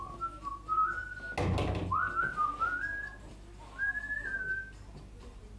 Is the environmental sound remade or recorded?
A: recorded